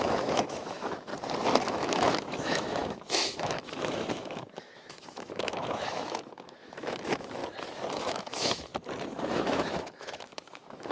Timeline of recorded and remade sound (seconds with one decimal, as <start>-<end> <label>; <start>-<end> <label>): 0.0-1.1 remade; 1.1-1.7 recorded; 1.7-7.4 remade; 7.4-7.9 recorded; 7.9-8.7 remade; 8.7-9.3 recorded; 9.3-10.9 remade

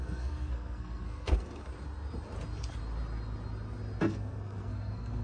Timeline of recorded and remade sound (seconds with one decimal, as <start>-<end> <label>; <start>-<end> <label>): 0.0-1.7 remade; 1.7-4.0 recorded; 4.0-5.2 remade

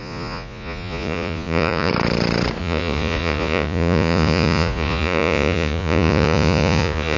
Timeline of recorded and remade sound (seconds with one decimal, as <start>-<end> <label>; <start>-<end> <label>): 0.0-1.9 remade; 1.9-2.6 recorded; 2.6-7.2 remade

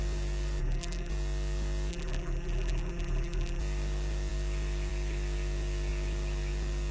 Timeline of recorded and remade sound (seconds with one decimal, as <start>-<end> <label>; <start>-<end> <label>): 0.0-0.6 recorded; 0.6-1.1 remade; 1.1-1.9 recorded; 1.9-3.6 remade; 3.6-6.9 recorded

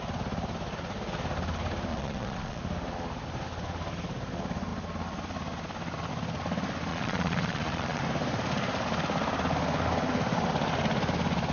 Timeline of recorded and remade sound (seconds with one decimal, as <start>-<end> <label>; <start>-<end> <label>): 0.0-1.9 recorded; 1.9-2.6 remade; 2.6-6.9 recorded; 6.9-8.0 remade; 8.0-11.5 recorded

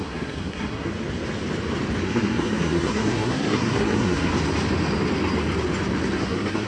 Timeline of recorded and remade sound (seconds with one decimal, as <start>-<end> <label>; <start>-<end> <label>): 0.0-0.9 remade; 0.9-2.0 recorded; 2.0-4.3 remade; 4.3-6.2 recorded; 6.2-6.7 remade

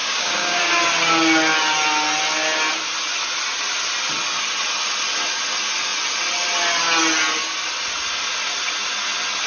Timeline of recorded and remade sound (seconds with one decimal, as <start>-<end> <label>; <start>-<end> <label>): 0.0-0.6 remade; 0.6-9.5 recorded

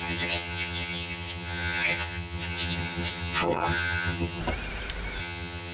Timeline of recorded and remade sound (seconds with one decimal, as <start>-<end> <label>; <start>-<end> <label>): 0.0-4.4 remade; 4.4-5.2 recorded; 5.2-5.7 remade